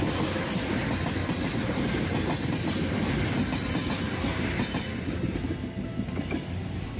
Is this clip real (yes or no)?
yes